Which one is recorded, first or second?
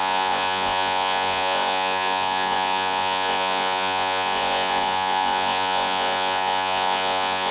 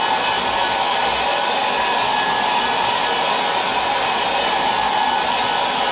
second